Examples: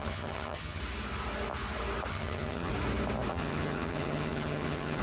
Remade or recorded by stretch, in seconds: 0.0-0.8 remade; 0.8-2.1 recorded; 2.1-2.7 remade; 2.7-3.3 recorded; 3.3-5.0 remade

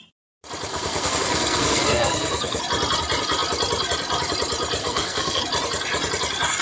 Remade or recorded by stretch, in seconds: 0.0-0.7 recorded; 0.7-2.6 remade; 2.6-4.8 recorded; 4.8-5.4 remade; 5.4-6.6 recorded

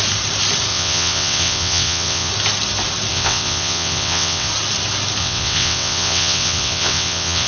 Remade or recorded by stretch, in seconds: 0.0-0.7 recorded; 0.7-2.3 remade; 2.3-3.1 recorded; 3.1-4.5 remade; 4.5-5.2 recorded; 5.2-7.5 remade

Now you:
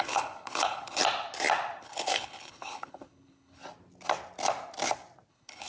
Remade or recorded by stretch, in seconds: 0.0-1.0 remade; 1.0-1.8 recorded; 1.8-3.6 remade; 3.6-5.3 recorded; 5.3-5.7 remade

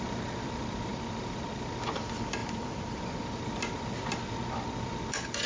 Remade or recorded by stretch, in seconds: 0.0-0.9 recorded; 0.9-1.5 remade; 1.5-2.4 recorded; 2.4-3.4 remade; 3.4-5.5 recorded

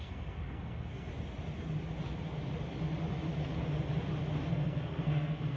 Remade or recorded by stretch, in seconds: 0.0-1.1 remade; 1.1-4.5 recorded; 4.5-5.6 remade